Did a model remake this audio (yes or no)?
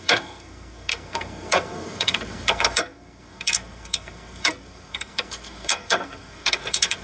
yes